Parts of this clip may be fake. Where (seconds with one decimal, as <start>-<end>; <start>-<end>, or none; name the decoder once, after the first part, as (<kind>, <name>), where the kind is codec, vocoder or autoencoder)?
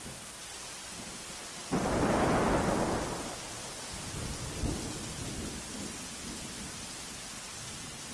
none